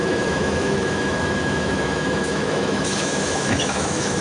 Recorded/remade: remade